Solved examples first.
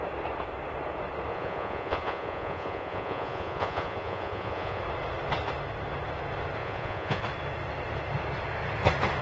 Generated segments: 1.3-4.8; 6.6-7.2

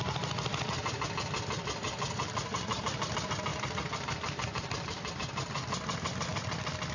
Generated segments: 0.5-2.8; 3.5-5.1

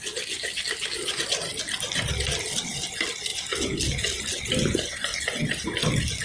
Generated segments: none

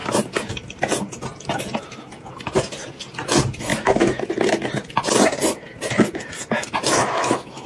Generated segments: 3.7-4.3; 7.0-7.7

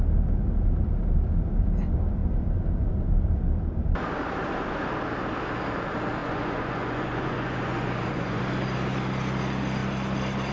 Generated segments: 6.2-8.4

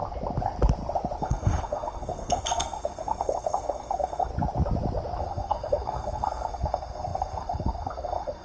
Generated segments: 1.2-4.3; 5.2-8.4

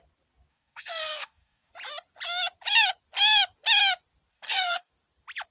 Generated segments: 0.5-1.7; 4.3-4.9

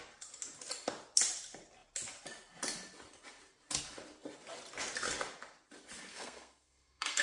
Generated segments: 6.1-7.2